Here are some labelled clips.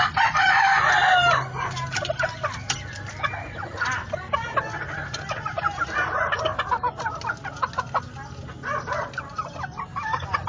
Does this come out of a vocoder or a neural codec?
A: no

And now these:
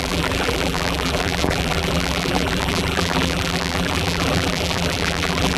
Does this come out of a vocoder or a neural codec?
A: yes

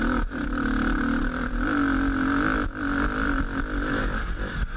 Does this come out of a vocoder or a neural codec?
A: no